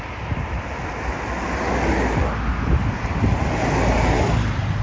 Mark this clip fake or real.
real